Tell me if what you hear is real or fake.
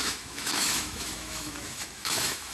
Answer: fake